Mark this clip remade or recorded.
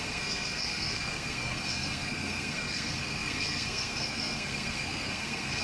remade